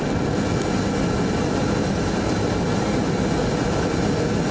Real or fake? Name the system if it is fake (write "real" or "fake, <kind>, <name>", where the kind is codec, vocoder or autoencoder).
real